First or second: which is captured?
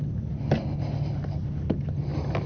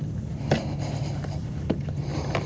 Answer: first